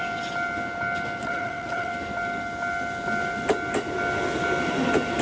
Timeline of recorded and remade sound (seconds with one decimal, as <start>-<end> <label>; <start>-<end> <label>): 0.0-1.2 recorded; 1.2-1.9 remade; 1.9-5.2 recorded